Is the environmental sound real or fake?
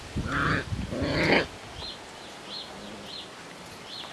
real